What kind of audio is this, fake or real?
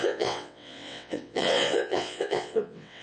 fake